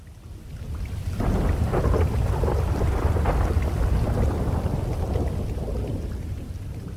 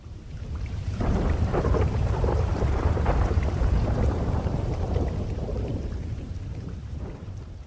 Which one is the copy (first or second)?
second